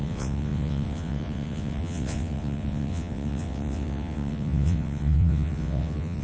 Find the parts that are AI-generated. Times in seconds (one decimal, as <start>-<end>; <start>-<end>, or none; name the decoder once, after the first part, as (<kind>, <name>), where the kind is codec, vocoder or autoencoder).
0.0-6.2 (vocoder, WaveNeXt)